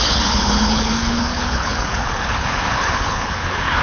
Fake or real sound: fake